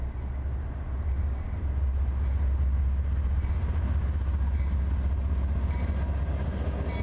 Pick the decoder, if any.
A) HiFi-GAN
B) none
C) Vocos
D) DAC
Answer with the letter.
B